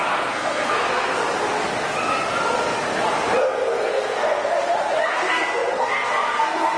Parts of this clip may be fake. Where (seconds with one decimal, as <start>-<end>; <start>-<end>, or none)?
0.0-1.1; 3.4-4.5; 5.1-6.8